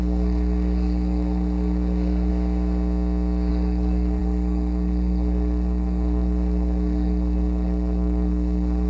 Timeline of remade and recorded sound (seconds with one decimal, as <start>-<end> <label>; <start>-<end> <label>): 0.0-2.3 remade; 2.3-3.5 recorded; 3.5-8.9 remade